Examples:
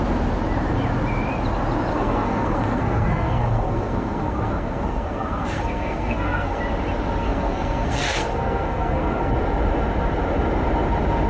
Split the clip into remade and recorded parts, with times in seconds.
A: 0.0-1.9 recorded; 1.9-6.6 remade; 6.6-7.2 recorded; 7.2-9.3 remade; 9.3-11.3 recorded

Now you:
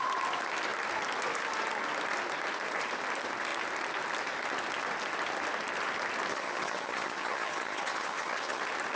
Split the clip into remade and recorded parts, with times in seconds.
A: 0.0-6.3 recorded; 6.3-8.6 remade; 8.6-9.0 recorded

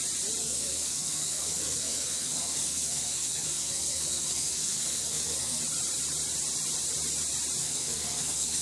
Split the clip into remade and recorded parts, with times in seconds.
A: 0.0-0.4 recorded; 0.4-5.6 remade; 5.6-7.6 recorded; 7.6-8.6 remade

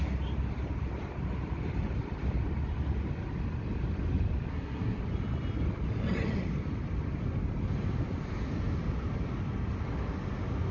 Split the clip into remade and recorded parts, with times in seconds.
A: 0.0-4.5 recorded; 4.5-5.0 remade; 5.0-10.7 recorded